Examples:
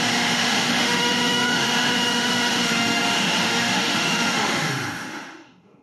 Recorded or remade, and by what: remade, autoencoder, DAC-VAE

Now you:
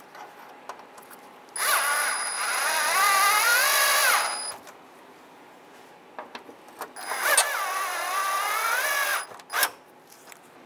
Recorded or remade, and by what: recorded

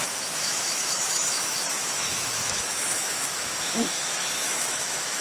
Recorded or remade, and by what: remade, autoencoder, DAC-VAE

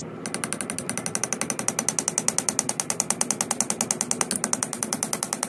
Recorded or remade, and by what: recorded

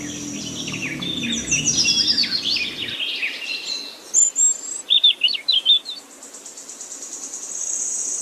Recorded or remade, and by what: recorded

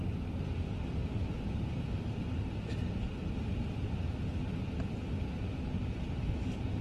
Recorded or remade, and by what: recorded